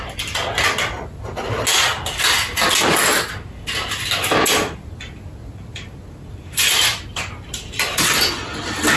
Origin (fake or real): real